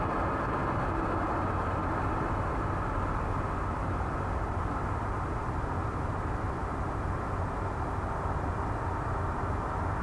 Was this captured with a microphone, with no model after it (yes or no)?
yes